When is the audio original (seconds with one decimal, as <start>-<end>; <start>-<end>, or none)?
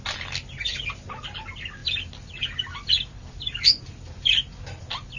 0.0-5.2